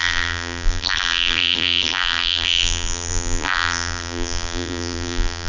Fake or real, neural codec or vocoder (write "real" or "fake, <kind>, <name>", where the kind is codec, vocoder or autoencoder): fake, vocoder, BigVGAN v2